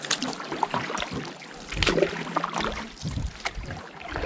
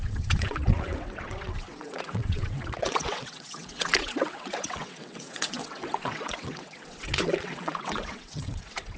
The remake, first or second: second